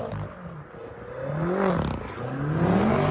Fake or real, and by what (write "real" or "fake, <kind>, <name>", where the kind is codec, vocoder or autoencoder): real